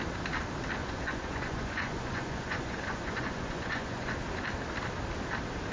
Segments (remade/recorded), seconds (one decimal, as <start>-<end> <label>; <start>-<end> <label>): 0.0-0.8 recorded; 0.8-4.2 remade; 4.2-5.7 recorded